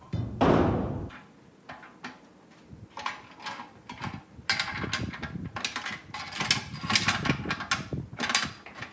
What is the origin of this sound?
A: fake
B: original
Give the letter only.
B